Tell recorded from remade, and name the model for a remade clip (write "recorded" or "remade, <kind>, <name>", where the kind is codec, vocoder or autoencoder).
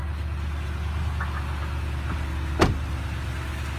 recorded